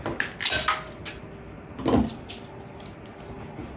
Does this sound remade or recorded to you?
recorded